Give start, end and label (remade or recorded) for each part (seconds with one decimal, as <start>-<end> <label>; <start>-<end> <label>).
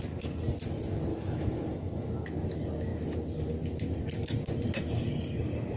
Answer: 0.0-1.1 recorded; 1.1-2.1 remade; 2.1-5.8 recorded